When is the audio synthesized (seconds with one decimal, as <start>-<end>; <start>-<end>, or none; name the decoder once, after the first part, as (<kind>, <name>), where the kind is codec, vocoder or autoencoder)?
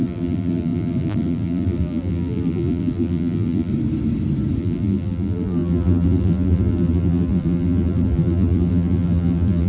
0.0-3.7 (vocoder, BigVGAN v2); 4.6-9.7